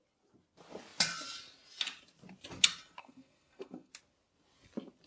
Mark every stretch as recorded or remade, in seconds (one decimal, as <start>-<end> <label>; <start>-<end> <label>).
0.0-3.0 recorded; 3.0-3.9 remade; 3.9-5.1 recorded